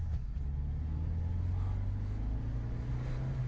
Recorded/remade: recorded